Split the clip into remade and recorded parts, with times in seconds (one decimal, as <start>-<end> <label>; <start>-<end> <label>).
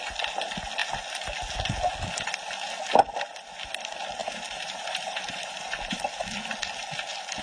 0.0-4.2 recorded; 4.2-6.0 remade; 6.0-7.4 recorded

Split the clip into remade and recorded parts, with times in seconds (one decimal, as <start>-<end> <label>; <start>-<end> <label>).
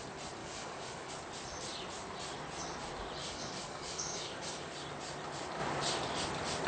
0.0-0.4 recorded; 0.4-1.1 remade; 1.1-3.2 recorded; 3.2-4.7 remade; 4.7-6.7 recorded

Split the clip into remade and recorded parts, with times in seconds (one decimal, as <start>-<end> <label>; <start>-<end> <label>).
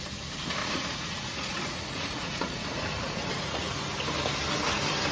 0.0-0.6 recorded; 0.6-3.7 remade; 3.7-5.1 recorded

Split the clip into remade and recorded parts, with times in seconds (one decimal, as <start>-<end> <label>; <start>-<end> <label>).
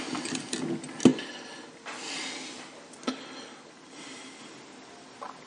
0.0-1.1 recorded; 1.1-4.4 remade; 4.4-5.5 recorded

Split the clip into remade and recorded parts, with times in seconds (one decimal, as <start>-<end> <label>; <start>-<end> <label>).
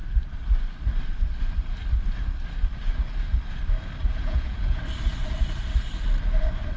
0.0-4.1 recorded; 4.1-4.8 remade; 4.8-6.8 recorded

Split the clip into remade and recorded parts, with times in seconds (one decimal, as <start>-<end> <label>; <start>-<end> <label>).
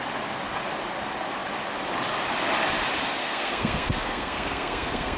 0.0-3.2 recorded; 3.2-5.2 remade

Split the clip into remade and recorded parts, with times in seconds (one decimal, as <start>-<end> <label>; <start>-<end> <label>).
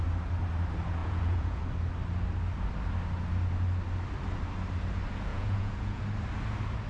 0.0-1.0 recorded; 1.0-1.6 remade; 1.6-5.3 recorded; 5.3-6.0 remade; 6.0-6.9 recorded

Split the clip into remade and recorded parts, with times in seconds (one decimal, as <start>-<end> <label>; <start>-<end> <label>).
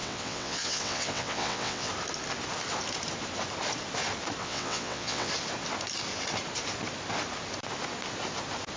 0.0-1.9 remade; 1.9-4.4 recorded; 4.4-5.3 remade; 5.3-8.8 recorded